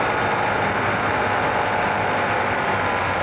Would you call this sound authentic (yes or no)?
yes